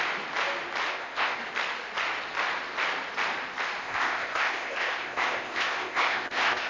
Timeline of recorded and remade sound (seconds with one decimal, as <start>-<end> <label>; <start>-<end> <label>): 0.0-0.9 recorded; 0.9-1.4 remade; 1.4-3.8 recorded; 3.8-6.7 remade